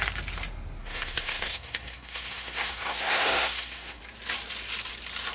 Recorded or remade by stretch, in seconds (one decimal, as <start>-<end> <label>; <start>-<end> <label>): 0.0-0.8 recorded; 0.8-4.0 remade; 4.0-5.3 recorded

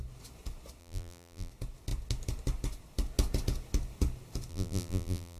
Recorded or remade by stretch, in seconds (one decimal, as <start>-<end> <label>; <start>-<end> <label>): 0.0-0.8 recorded; 0.8-1.5 remade; 1.5-4.5 recorded; 4.5-5.4 remade

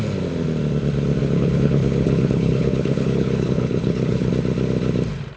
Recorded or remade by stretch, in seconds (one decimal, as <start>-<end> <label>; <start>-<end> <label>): 0.0-1.2 recorded; 1.2-4.3 remade; 4.3-5.4 recorded

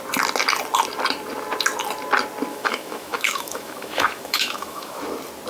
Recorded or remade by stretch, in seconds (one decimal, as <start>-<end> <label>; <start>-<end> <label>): 0.0-2.5 recorded; 2.5-5.0 remade; 5.0-5.5 recorded

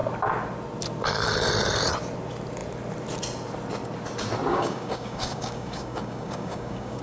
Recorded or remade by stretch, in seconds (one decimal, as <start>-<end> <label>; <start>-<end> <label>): 0.0-4.5 recorded; 4.5-7.0 remade

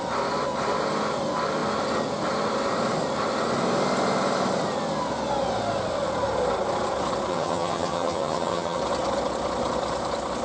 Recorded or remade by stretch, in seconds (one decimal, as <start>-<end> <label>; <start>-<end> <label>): 0.0-7.3 recorded; 7.3-8.8 remade; 8.8-10.4 recorded

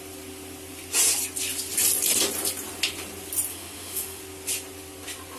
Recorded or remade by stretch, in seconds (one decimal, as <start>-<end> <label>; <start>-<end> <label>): 0.0-3.5 recorded; 3.5-4.2 remade; 4.2-5.4 recorded

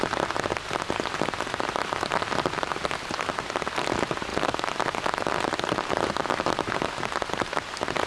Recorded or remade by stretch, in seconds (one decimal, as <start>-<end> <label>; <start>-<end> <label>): 0.0-8.1 recorded